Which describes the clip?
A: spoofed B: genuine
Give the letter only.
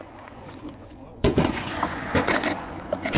A